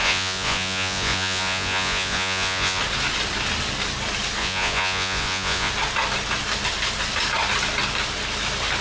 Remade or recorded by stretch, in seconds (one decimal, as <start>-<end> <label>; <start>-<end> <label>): 0.0-2.8 remade; 2.8-4.4 recorded; 4.4-5.7 remade; 5.7-8.8 recorded